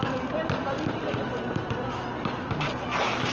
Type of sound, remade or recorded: recorded